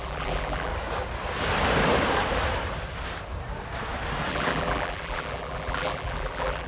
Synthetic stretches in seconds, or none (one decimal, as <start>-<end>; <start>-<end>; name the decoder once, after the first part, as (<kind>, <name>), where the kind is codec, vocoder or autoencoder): 0.0-0.7 (vocoder, BigVGAN v2); 4.3-6.7